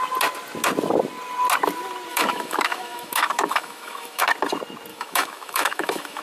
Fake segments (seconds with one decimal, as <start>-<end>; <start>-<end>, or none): 2.1-4.2; 4.9-6.2